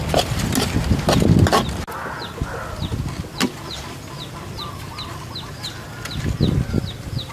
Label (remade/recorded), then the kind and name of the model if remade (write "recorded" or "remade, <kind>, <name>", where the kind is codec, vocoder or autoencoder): recorded